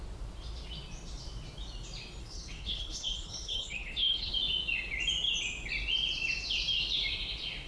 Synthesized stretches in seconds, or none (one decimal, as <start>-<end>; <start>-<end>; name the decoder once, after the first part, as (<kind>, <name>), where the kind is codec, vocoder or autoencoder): 2.2-4.3 (codec, HILCodec)